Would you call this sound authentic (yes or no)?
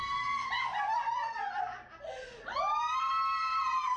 yes